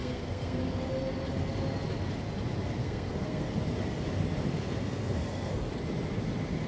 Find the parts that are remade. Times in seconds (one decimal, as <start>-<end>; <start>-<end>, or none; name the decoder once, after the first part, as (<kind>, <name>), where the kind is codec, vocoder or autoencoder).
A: 0.0-0.6 (codec, SNAC); 2.8-3.5; 4.5-5.7